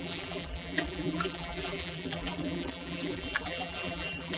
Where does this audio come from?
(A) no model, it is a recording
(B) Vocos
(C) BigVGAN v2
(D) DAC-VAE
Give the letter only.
C